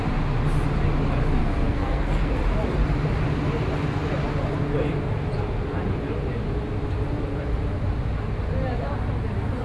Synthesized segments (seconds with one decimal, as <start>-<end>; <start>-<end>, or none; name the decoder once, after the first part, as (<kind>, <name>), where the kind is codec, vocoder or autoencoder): 1.4-2.4 (codec, SNAC)